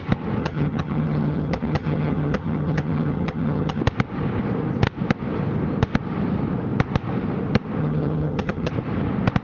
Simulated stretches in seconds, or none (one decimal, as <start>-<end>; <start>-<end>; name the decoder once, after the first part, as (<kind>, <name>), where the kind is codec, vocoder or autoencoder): 0.4-3.8 (vocoder, HiFi-GAN); 7.8-8.7